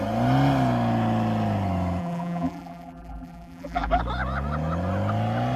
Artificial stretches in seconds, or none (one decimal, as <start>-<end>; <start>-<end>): 2.0-4.0